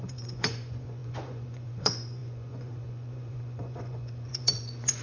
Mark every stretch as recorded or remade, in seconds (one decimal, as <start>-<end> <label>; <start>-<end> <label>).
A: 0.0-5.0 remade